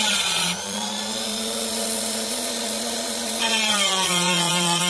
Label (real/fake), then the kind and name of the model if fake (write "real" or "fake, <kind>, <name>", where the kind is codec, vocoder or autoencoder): fake, vocoder, Vocos